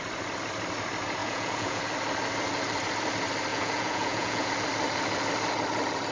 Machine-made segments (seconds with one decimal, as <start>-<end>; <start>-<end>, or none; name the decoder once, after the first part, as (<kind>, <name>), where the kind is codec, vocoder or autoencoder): 1.2-1.8 (vocoder, Vocos); 3.5-4.5